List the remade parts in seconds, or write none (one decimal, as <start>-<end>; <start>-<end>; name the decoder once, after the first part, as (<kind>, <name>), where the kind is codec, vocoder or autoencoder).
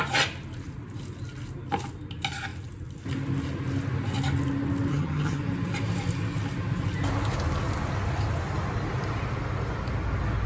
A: 4.9-5.4 (vocoder, HiFi-GAN)